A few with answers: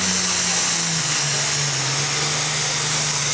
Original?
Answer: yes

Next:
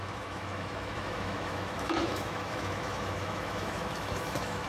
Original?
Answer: no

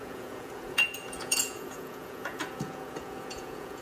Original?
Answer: no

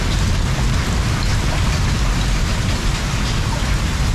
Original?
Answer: yes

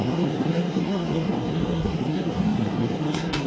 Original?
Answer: no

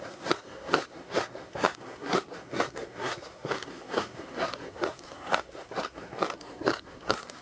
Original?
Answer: no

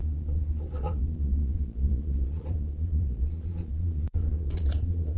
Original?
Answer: no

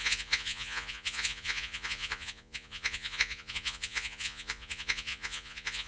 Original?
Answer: no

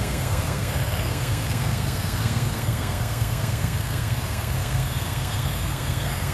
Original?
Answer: no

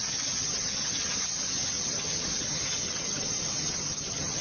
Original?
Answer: no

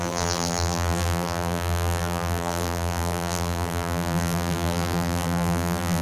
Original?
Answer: no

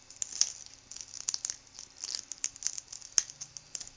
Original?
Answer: yes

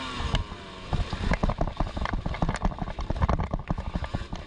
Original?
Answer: yes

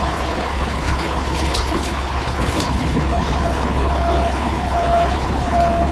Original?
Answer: no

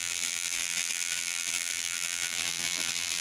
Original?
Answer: no